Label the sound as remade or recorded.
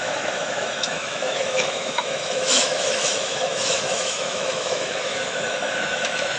remade